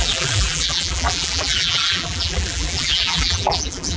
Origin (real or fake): fake